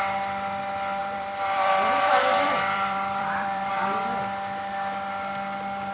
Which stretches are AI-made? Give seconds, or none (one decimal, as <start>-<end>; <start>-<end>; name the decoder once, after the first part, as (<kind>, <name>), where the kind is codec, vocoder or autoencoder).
1.0-3.7 (vocoder, BigVGAN v2)